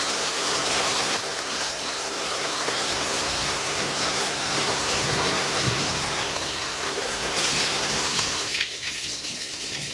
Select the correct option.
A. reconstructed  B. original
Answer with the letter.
A